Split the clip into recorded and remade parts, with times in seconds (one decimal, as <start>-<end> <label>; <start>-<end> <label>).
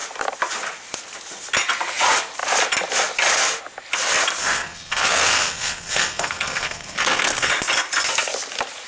0.0-4.4 recorded; 4.4-7.5 remade; 7.5-8.9 recorded